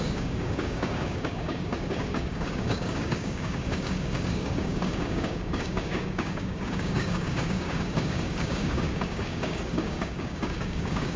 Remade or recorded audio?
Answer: remade